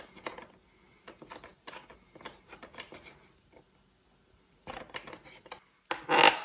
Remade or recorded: recorded